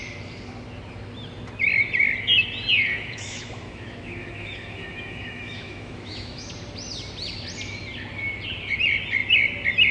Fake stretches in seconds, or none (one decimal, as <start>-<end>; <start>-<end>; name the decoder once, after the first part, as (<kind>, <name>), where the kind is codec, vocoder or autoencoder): 2.9-6.5 (autoencoder, DAC-VAE)